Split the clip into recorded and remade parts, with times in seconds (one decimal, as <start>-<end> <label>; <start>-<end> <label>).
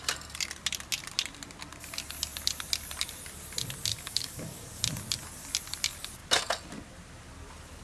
0.0-3.9 recorded; 3.9-4.8 remade; 4.8-7.8 recorded